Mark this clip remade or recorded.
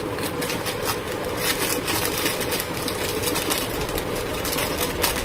recorded